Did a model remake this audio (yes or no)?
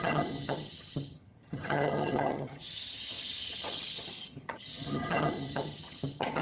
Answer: yes